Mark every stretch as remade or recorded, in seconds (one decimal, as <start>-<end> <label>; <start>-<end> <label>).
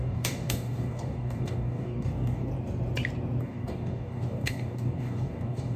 0.0-2.5 remade; 2.5-3.4 recorded; 3.4-5.8 remade